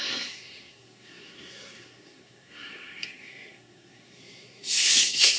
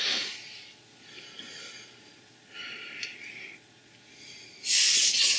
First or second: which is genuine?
second